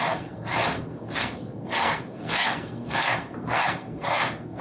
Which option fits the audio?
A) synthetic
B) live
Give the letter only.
A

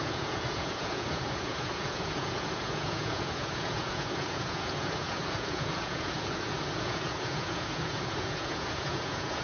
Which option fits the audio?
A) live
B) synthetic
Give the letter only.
B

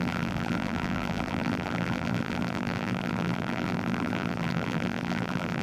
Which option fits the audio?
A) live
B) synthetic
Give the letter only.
B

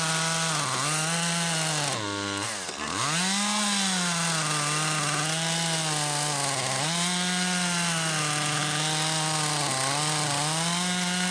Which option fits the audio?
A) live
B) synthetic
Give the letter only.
A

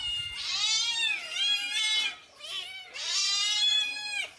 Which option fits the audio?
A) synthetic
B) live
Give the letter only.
B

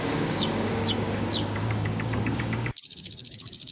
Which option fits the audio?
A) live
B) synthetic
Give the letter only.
B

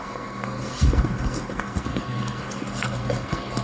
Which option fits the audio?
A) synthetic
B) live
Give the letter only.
A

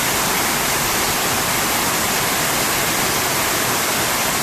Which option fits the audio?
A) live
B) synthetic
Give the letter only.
A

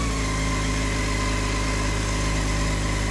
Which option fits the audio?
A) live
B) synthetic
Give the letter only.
A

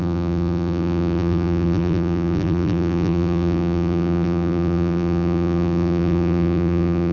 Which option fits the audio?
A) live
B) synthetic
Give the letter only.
B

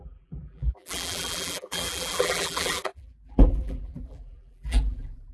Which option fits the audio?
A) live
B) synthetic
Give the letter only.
B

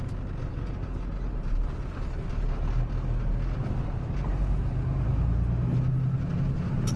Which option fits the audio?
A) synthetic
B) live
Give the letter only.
B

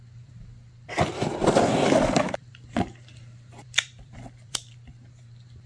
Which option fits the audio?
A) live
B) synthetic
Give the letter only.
B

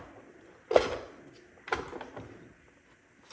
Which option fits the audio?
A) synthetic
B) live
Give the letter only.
B